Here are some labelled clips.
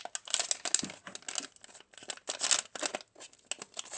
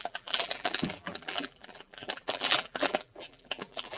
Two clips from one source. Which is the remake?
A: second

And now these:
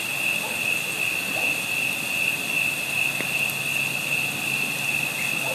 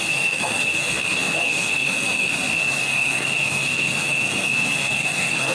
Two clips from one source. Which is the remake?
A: second